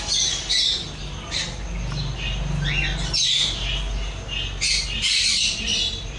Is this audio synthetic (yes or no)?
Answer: no